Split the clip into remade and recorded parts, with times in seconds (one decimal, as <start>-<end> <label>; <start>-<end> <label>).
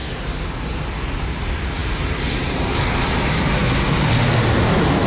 0.0-5.1 recorded